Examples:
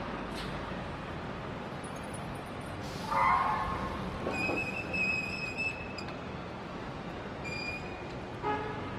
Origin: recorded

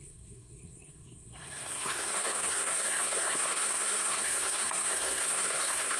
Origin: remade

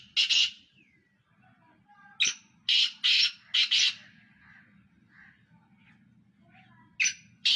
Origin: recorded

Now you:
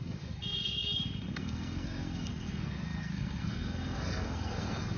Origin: remade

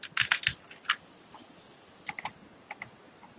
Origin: recorded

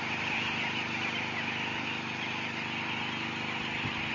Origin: recorded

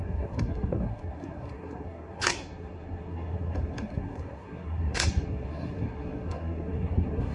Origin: remade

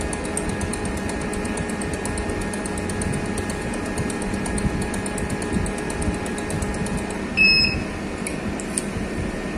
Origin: recorded